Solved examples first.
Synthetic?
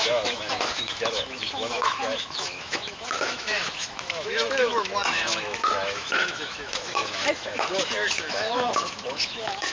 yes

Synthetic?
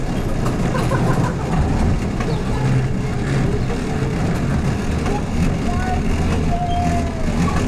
no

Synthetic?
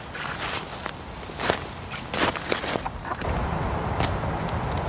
no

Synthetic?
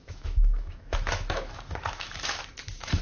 yes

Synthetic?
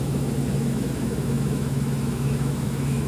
yes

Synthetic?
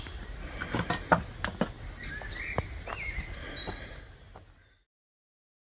no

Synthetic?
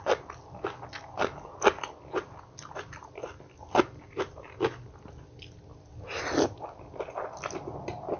no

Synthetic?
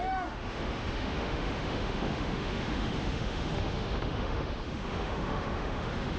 yes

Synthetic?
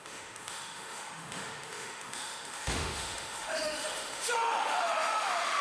yes